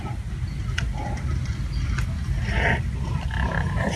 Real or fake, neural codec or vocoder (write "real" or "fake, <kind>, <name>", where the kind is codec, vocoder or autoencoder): real